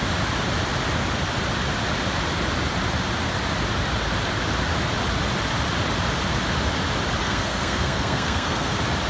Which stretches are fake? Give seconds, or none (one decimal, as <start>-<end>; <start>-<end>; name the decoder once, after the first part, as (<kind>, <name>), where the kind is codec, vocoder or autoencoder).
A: 7.2-8.7 (codec, SNAC)